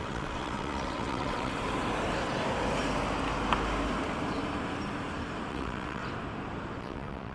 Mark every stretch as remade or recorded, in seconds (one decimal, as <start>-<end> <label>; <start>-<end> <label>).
0.0-1.5 remade; 1.5-5.5 recorded; 5.5-6.0 remade; 6.0-6.8 recorded; 6.8-7.3 remade